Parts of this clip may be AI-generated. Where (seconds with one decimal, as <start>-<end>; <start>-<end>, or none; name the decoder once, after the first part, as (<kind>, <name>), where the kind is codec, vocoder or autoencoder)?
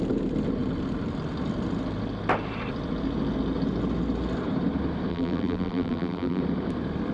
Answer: 5.1-6.4 (vocoder, BigVGAN v2)